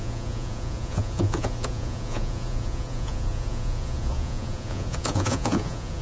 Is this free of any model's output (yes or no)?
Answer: no